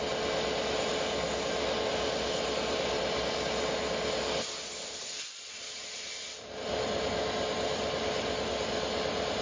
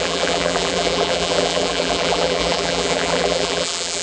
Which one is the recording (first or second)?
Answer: first